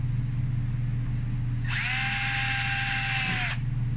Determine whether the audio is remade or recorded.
recorded